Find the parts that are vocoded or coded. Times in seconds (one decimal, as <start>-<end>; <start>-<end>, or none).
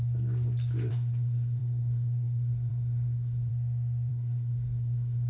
0.9-3.5; 4.1-5.3